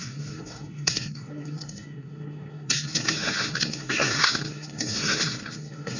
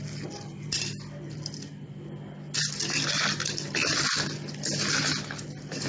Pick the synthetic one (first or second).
first